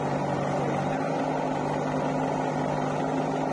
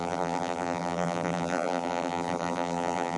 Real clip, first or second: first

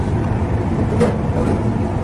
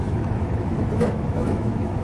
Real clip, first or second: first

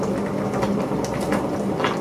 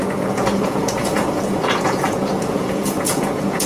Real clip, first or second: first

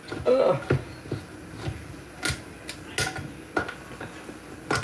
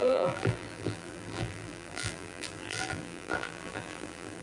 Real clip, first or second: first